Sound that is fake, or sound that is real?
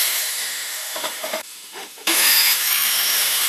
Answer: fake